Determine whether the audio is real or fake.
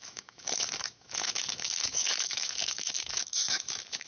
fake